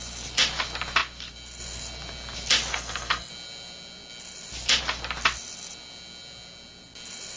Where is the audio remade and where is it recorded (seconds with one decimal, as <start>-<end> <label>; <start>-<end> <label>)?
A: 0.0-2.7 recorded; 2.7-3.3 remade; 3.3-7.4 recorded